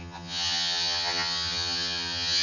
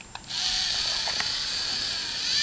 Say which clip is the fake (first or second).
first